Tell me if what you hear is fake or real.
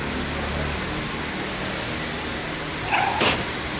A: real